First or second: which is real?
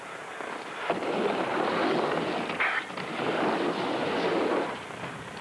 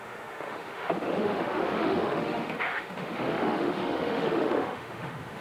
first